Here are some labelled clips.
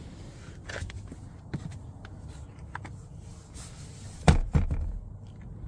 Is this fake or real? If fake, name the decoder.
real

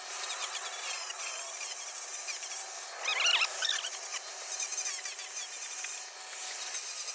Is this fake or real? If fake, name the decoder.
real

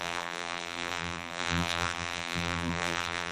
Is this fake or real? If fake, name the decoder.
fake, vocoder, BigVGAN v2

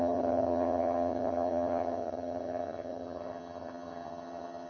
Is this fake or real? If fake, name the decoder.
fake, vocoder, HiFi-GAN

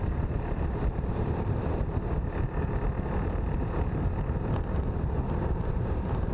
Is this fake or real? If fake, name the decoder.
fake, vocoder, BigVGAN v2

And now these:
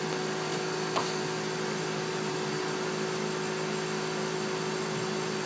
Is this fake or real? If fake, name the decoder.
real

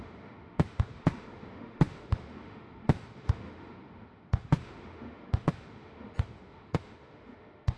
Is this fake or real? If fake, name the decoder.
fake, autoencoder, DAC-VAE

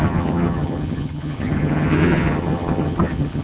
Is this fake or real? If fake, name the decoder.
fake, vocoder, HiFi-GAN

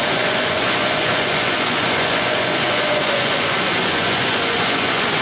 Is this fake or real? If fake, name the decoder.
fake, vocoder, Vocos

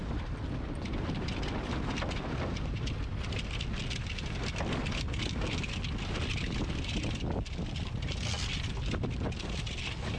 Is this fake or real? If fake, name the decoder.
real